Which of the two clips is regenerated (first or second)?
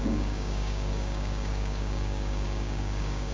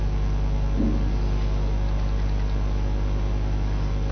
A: first